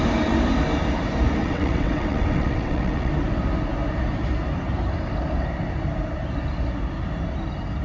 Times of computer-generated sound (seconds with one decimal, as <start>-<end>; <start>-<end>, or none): 1.4-3.1